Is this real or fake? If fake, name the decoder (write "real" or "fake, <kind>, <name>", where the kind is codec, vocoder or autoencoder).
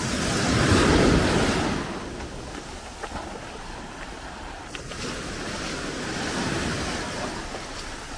real